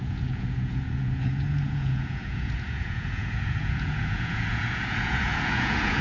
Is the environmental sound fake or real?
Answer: fake